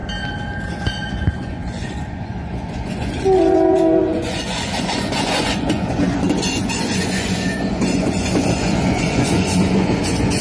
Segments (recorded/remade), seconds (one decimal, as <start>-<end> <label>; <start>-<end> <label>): 0.0-0.7 recorded; 0.7-10.4 remade